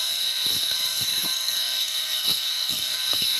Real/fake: fake